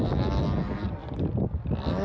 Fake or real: real